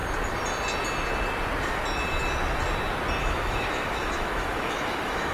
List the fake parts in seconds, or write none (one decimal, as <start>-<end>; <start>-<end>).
3.2-5.3